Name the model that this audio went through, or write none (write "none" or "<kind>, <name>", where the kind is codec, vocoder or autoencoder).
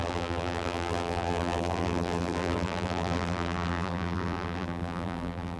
vocoder, BigVGAN v2